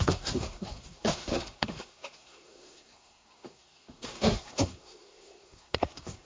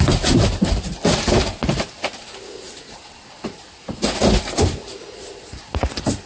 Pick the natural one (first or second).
second